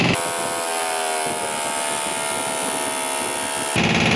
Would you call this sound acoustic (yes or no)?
yes